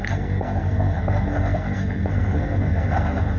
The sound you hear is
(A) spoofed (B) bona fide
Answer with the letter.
A